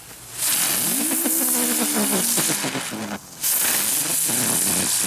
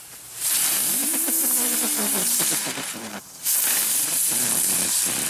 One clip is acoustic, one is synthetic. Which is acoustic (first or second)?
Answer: first